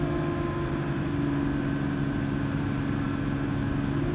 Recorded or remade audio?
recorded